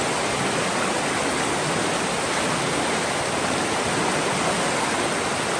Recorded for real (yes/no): yes